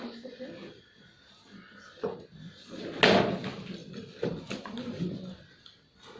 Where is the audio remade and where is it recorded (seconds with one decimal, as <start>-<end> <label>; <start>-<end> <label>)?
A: 0.0-6.2 recorded